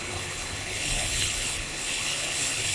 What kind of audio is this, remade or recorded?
remade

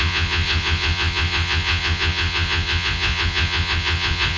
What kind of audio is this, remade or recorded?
remade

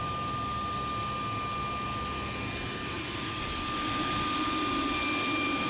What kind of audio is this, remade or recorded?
recorded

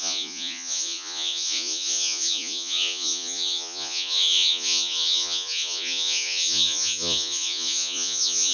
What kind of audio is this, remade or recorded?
remade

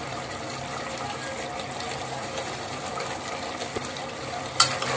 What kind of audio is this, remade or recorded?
recorded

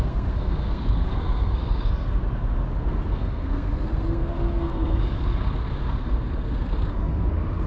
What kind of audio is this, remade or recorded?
remade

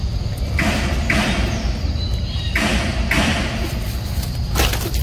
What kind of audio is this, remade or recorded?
recorded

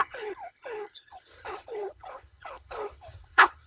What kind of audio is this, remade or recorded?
remade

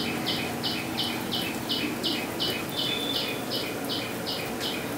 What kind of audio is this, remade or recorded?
recorded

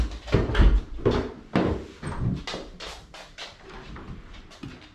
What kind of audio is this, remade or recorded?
recorded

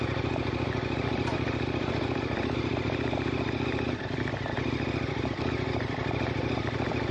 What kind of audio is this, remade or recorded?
remade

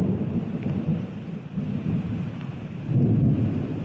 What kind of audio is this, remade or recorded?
recorded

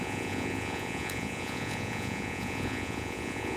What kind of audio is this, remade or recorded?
remade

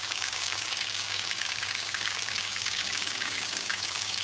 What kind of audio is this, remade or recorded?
remade